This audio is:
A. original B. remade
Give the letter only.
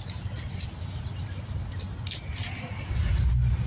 A